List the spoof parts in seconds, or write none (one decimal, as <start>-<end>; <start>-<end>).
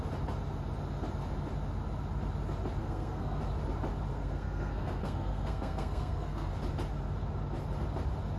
2.8-3.4; 4.1-6.5